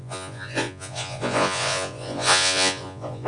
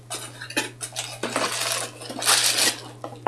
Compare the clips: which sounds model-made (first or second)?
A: first